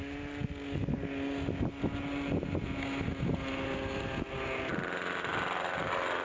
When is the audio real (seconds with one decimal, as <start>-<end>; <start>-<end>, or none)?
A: 0.0-6.2